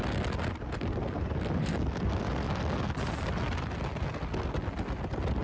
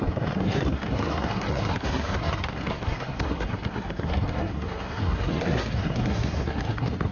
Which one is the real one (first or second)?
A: first